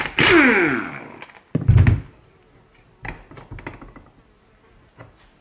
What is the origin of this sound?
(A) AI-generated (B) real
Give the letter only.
B